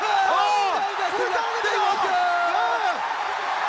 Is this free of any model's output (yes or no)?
yes